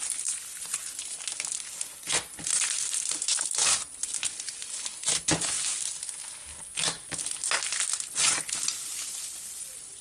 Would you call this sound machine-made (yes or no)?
no